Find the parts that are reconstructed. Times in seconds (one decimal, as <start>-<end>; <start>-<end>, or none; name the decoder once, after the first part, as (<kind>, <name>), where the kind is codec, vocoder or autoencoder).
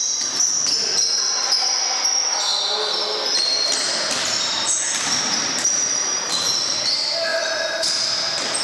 5.4-6.8 (vocoder, BigVGAN v2); 7.3-7.9